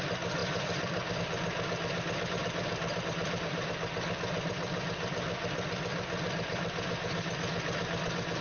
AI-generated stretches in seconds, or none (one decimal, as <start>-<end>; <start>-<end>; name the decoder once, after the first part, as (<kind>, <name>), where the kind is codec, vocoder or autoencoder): 0.4-1.2 (vocoder, BigVGAN v2); 2.6-3.5